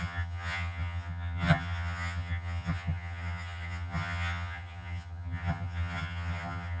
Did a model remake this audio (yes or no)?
yes